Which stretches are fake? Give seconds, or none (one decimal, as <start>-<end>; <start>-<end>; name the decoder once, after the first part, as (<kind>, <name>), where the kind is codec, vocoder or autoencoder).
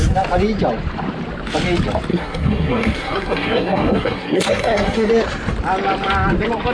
2.1-5.1 (codec, SNAC)